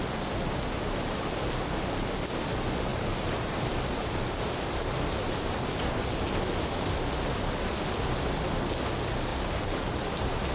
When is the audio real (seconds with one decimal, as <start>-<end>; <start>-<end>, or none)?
0.0-2.9; 6.1-9.3